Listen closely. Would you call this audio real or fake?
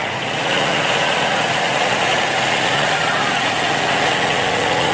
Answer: fake